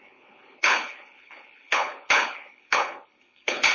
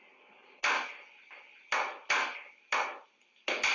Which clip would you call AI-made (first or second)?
first